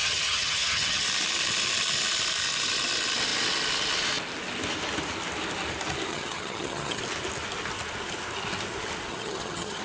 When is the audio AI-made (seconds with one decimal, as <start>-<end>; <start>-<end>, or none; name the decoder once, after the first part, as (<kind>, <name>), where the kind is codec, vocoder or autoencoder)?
0.0-1.0 (vocoder, HiFi-GAN); 6.1-7.0; 9.1-9.8